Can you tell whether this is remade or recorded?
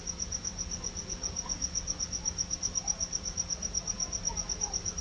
recorded